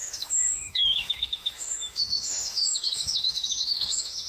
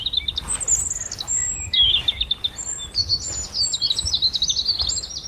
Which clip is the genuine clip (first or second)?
second